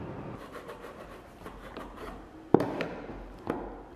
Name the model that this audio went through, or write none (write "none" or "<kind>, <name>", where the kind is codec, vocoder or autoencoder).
vocoder, BigVGAN v2